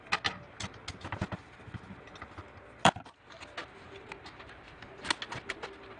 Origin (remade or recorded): recorded